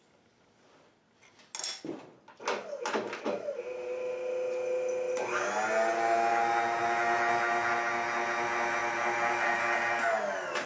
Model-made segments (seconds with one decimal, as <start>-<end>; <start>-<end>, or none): 6.3-6.8; 8.8-9.6